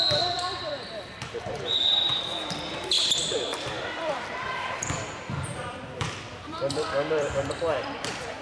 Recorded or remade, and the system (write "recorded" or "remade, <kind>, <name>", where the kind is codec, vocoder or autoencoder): remade, vocoder, BigVGAN v2